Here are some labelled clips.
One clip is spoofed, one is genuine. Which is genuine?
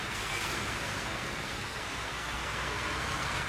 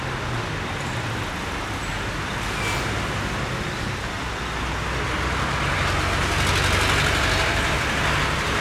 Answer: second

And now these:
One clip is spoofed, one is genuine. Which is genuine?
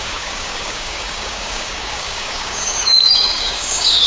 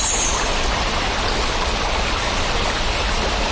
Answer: second